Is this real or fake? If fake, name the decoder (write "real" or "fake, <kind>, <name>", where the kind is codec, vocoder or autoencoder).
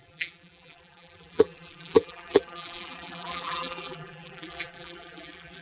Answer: fake, vocoder, BigVGAN v2